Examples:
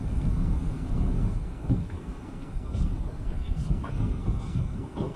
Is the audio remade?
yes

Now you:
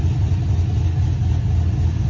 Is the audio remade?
no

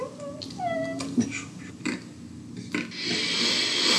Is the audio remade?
no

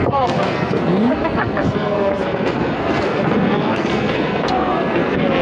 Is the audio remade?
yes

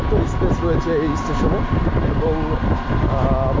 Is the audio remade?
no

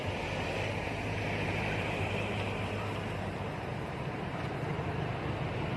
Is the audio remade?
yes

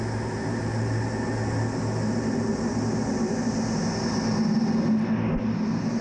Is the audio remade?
no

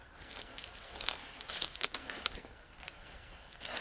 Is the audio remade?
yes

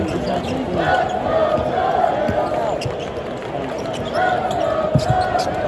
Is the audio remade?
no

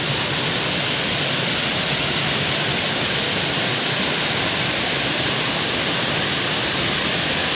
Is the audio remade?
no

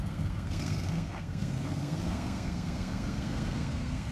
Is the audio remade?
yes